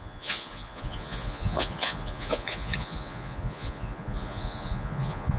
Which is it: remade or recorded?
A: remade